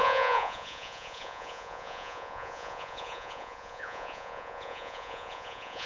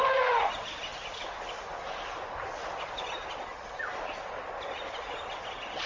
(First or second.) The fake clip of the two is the first